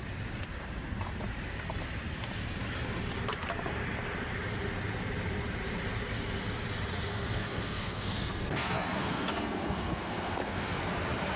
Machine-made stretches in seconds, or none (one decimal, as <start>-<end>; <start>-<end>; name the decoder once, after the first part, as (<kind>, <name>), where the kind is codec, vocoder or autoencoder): 7.1-10.9 (codec, SNAC)